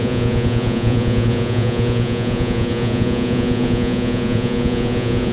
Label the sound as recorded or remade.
remade